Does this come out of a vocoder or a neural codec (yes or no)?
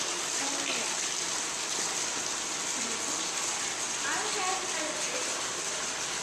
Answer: no